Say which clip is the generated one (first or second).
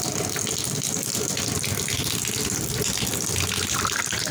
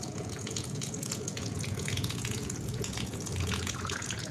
second